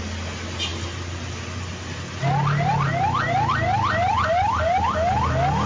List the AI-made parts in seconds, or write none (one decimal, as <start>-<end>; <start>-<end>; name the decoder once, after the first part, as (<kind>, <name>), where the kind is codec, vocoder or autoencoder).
none